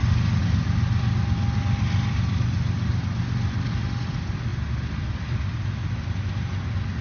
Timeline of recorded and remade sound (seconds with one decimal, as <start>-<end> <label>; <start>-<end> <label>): 0.0-7.0 recorded